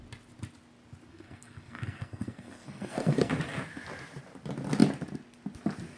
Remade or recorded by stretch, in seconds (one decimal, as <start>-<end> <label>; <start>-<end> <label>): 0.0-1.1 recorded; 1.1-3.3 remade; 3.3-6.0 recorded